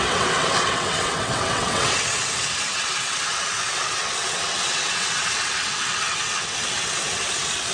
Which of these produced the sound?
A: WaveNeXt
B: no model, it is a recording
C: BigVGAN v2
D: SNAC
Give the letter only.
A